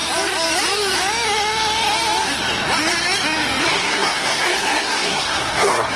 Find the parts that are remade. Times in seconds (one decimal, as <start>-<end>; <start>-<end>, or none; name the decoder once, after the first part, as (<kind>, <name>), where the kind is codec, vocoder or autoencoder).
3.6-6.0 (codec, SNAC)